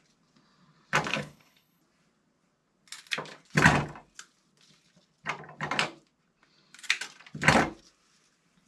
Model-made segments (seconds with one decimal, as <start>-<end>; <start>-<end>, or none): 1.1-1.8